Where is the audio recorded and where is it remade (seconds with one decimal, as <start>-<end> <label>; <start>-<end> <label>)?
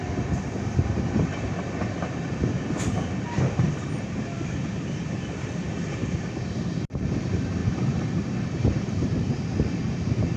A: 0.0-7.6 recorded; 7.6-9.4 remade; 9.4-10.4 recorded